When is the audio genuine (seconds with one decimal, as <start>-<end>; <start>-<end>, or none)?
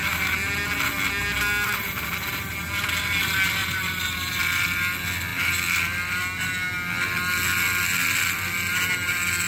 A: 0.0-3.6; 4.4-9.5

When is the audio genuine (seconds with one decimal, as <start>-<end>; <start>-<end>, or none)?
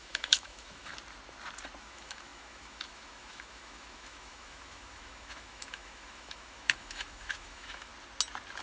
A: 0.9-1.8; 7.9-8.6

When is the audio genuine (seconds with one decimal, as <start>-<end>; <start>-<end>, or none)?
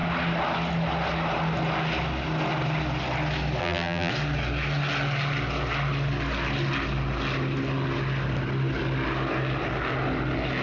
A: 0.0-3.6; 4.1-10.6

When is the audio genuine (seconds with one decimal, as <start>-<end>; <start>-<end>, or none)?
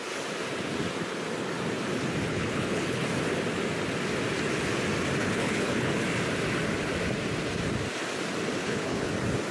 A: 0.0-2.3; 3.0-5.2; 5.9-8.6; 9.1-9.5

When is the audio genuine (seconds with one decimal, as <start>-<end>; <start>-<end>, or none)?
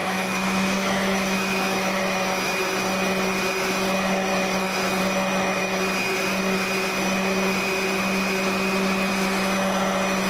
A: 2.0-4.3; 5.0-10.3